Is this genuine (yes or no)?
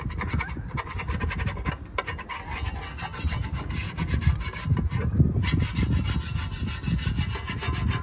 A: yes